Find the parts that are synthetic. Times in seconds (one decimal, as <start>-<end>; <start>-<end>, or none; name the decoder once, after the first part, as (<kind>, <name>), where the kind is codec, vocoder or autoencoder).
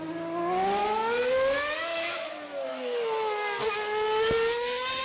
0.8-1.3 (autoencoder, DAC-VAE); 1.8-2.3; 2.7-3.6